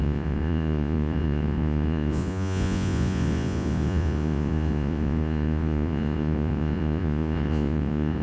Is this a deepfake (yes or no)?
yes